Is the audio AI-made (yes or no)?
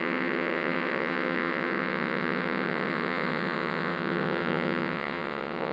yes